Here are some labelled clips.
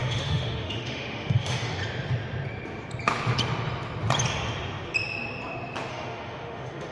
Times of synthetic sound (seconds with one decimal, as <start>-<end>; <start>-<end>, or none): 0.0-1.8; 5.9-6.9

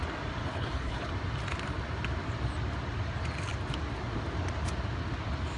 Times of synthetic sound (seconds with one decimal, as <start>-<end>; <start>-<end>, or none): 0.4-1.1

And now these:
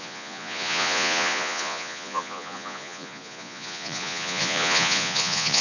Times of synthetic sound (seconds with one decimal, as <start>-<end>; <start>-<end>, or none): 0.0-5.6